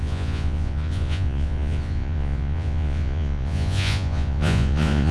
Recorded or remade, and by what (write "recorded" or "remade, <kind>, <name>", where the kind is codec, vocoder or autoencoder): remade, vocoder, Vocos